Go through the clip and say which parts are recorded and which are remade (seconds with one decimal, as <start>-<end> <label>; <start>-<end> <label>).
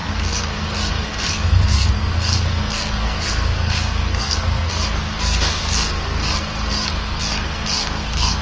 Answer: 0.0-8.4 remade